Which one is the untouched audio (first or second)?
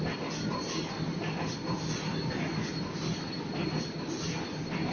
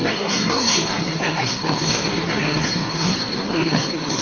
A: first